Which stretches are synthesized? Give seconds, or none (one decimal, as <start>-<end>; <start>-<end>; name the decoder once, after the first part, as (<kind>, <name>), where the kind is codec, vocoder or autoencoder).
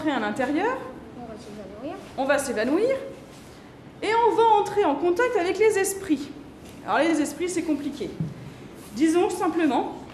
none